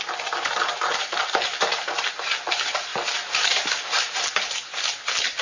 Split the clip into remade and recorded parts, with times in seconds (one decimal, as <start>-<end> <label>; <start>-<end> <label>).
0.0-0.9 recorded; 0.9-1.9 remade; 1.9-2.9 recorded; 2.9-4.1 remade; 4.1-5.4 recorded